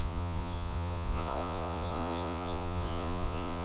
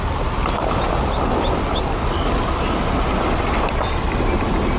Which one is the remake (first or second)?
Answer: first